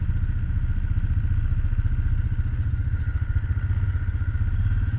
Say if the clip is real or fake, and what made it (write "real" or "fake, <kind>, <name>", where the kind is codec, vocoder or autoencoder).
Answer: real